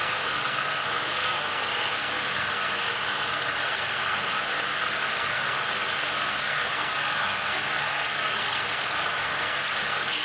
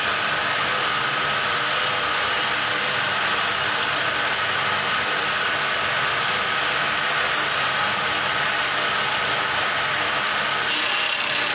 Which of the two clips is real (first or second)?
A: second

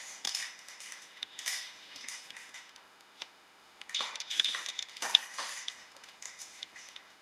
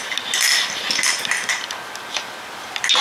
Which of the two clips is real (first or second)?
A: second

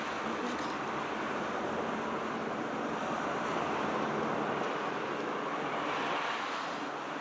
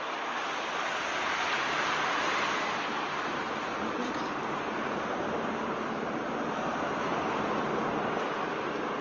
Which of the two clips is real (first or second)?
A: first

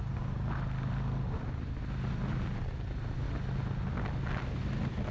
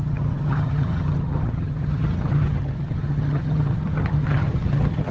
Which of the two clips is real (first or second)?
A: first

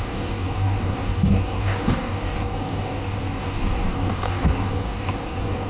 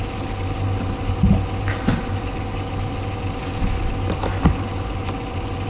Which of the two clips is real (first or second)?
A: second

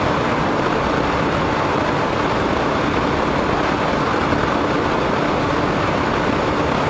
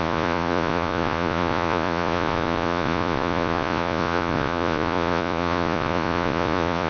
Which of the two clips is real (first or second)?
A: first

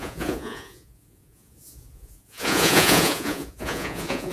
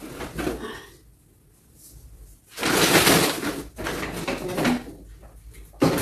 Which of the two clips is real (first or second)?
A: second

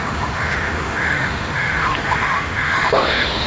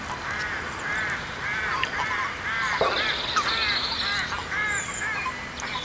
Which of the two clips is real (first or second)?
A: second